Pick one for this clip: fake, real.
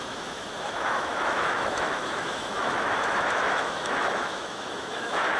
fake